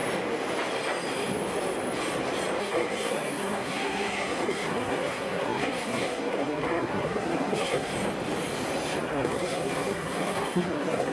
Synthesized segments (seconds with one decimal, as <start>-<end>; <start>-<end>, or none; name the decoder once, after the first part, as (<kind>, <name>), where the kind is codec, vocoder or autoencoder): 2.6-7.9 (codec, SNAC); 9.0-11.1